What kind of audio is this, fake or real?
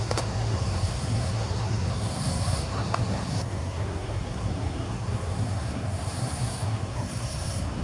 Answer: fake